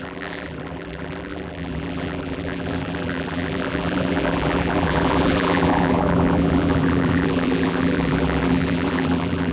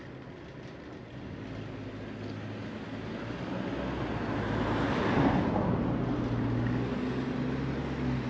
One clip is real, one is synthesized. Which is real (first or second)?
second